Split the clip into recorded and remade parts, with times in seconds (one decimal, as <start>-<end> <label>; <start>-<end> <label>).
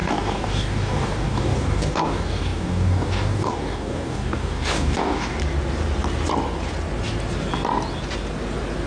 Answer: 0.0-5.4 remade; 5.4-8.9 recorded